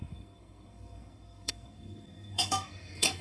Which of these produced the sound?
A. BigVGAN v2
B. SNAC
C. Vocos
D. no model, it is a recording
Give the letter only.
B